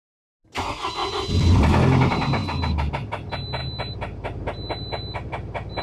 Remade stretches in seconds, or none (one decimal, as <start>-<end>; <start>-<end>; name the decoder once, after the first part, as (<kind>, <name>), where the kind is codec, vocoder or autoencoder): 2.4-2.9 (vocoder, BigVGAN v2)